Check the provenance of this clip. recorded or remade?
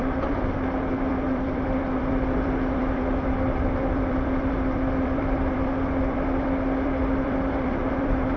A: remade